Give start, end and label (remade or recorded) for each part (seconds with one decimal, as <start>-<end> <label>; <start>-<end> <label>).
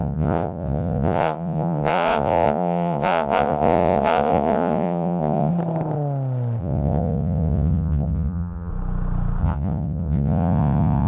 0.0-5.5 remade; 5.5-6.6 recorded; 6.6-8.7 remade; 8.7-9.4 recorded; 9.4-11.1 remade